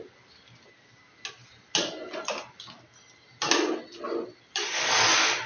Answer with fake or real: real